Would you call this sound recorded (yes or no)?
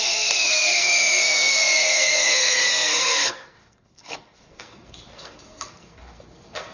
no